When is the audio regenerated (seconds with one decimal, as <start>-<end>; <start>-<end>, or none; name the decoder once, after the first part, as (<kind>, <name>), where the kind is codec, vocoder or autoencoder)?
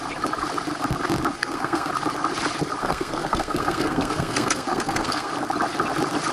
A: 1.4-1.9 (codec, SNAC); 2.8-5.3